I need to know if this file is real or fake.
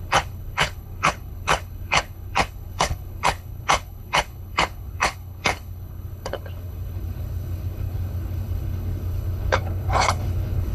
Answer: fake